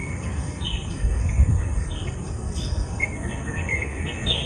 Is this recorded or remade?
remade